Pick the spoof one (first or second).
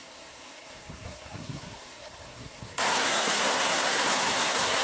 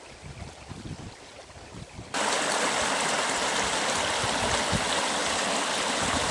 first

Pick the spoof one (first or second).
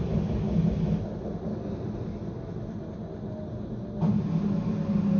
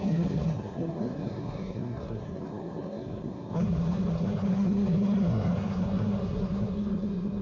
second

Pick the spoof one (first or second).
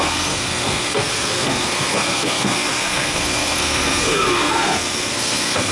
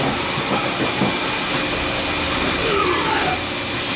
first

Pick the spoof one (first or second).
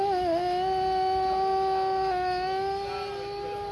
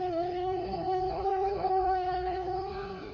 second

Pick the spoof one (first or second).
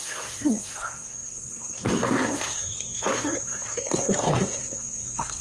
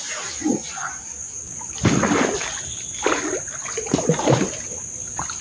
first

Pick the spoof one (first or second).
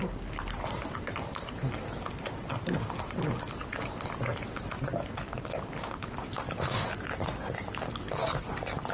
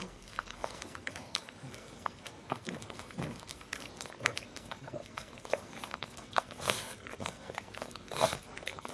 second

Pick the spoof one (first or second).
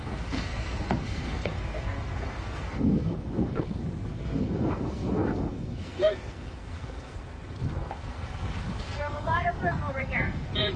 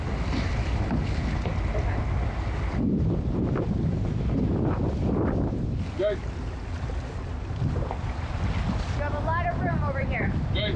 first